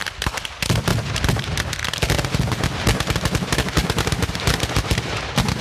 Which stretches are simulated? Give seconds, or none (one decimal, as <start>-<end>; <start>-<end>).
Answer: none